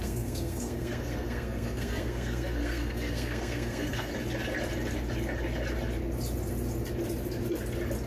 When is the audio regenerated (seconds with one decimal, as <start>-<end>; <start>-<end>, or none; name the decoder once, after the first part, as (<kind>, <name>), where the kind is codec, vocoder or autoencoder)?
0.0-4.1 (codec, SNAC)